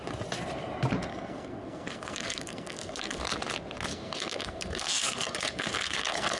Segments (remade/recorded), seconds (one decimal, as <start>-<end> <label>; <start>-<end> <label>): 0.0-1.1 recorded; 1.1-3.2 remade; 3.2-3.9 recorded; 3.9-6.4 remade